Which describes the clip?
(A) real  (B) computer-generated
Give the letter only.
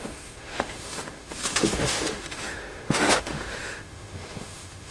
B